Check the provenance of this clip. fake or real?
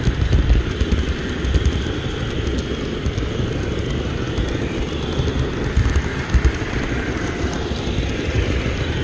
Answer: real